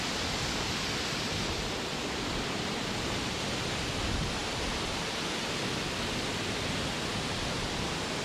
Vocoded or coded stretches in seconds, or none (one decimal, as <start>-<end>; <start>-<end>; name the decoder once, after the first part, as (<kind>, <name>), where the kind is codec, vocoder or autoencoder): none